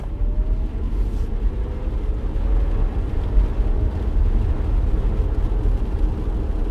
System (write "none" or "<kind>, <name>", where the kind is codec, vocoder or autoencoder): none